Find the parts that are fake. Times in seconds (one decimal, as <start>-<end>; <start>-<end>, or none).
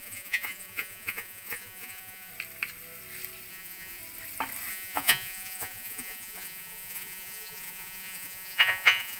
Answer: 0.0-2.3; 3.5-4.0; 4.7-9.2